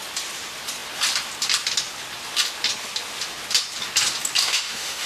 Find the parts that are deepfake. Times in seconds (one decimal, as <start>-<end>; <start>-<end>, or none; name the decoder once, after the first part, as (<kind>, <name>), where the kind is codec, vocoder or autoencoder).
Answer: 4.4-5.1 (autoencoder, DAC-VAE)